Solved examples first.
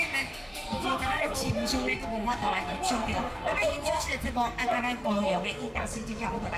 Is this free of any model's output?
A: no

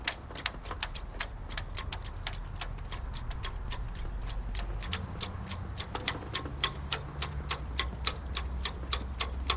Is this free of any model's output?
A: yes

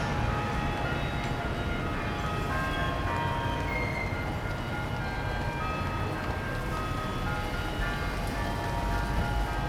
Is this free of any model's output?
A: yes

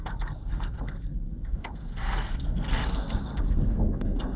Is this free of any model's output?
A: no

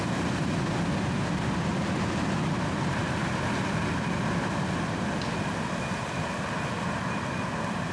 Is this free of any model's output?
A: yes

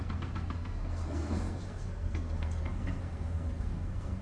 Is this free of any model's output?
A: no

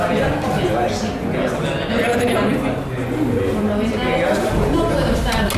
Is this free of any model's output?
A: yes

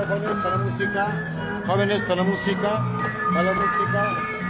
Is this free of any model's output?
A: yes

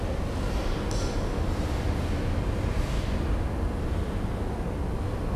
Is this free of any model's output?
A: yes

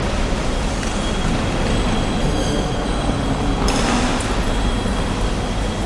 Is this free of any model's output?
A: yes